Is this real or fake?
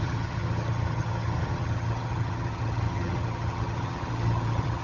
fake